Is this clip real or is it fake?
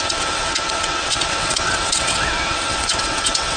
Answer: fake